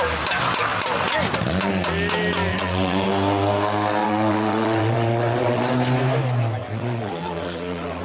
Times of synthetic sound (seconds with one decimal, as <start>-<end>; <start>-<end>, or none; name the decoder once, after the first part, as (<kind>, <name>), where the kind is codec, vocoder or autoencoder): 2.5-3.1 (vocoder, WaveNeXt); 4.0-5.7; 6.6-8.0

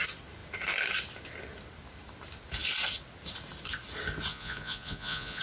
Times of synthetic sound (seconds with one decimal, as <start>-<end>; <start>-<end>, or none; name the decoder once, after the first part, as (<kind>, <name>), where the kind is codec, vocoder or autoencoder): 4.3-5.4 (vocoder, Vocos)

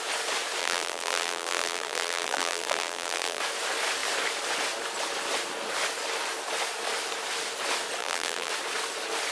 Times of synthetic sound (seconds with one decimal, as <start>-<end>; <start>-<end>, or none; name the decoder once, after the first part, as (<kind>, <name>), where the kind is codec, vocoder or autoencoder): 0.6-3.4 (vocoder, BigVGAN v2); 8.0-8.5

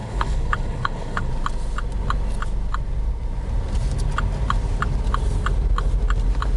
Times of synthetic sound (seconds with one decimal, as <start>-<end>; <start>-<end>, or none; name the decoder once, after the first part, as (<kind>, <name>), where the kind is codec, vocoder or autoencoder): 0.0-1.3 (codec, HILCodec)

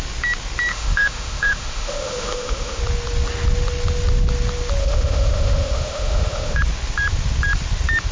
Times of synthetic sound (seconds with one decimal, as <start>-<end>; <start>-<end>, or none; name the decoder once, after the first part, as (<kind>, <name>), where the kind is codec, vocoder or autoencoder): 0.7-2.8 (autoencoder, DAC-VAE); 4.8-6.6

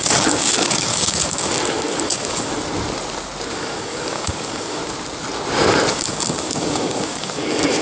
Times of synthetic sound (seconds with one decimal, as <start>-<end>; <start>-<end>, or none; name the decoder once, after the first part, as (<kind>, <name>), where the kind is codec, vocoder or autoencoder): 0.0-2.5 (codec, DAC); 3.5-4.8; 5.9-7.8